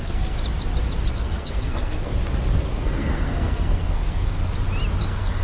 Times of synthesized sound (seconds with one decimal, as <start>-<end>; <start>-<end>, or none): 0.0-0.4; 1.1-2.1; 2.7-4.4; 5.0-5.4